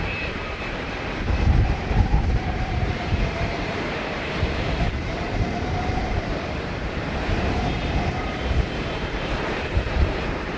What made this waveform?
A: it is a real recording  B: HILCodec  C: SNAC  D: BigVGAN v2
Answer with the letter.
D